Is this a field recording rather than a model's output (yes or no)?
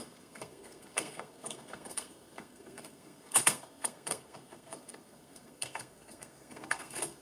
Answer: no